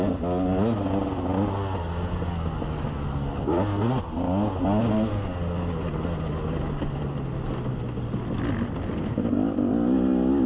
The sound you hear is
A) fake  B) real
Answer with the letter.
B